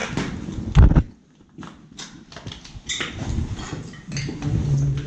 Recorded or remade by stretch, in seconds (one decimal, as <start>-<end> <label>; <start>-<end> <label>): 0.0-5.1 recorded